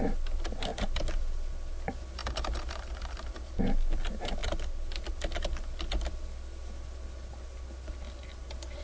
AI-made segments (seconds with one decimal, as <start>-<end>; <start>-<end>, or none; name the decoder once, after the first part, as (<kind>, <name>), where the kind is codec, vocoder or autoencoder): none